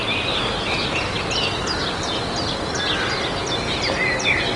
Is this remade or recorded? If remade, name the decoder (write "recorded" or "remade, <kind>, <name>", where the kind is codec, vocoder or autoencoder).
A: recorded